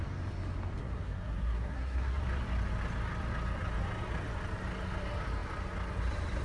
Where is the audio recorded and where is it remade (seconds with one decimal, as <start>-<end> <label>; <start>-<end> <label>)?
0.0-0.8 recorded; 0.8-2.2 remade; 2.2-6.4 recorded